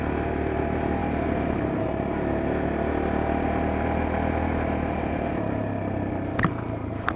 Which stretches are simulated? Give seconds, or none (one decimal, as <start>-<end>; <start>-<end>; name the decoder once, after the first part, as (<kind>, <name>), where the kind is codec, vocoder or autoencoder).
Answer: none

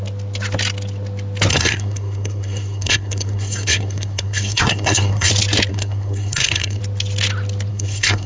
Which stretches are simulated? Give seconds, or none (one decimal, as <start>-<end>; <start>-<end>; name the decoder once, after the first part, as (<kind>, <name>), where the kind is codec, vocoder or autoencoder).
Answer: 1.5-5.3 (codec, SNAC); 5.7-6.8; 7.7-8.3

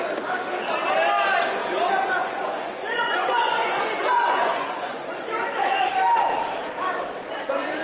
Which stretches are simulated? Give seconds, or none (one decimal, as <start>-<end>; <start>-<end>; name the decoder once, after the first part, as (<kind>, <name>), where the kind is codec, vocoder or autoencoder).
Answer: 1.6-5.8 (vocoder, Vocos)

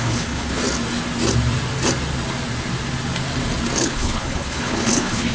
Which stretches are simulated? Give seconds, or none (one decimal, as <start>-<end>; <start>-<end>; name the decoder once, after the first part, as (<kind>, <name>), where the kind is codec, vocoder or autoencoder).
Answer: 0.0-0.6 (codec, HILCodec); 3.8-5.3

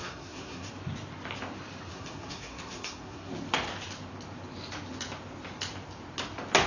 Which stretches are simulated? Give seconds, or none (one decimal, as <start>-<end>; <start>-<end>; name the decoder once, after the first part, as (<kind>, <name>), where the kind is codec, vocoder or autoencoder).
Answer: 0.0-0.7 (codec, SNAC); 1.9-3.3

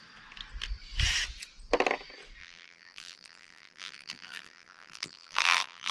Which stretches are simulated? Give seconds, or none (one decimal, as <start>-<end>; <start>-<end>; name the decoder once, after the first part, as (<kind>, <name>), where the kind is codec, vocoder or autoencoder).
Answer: 2.4-5.9 (vocoder, BigVGAN v2)